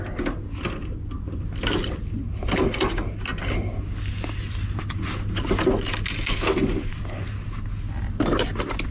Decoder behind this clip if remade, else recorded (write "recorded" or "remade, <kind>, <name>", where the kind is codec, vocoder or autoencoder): recorded